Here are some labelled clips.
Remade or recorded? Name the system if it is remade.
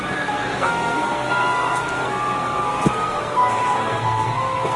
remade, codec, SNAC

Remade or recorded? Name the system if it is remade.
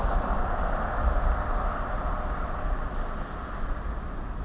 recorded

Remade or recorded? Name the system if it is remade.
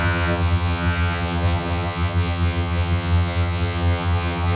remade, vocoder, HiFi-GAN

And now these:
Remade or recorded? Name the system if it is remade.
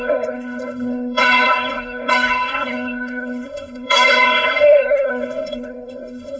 remade, codec, SNAC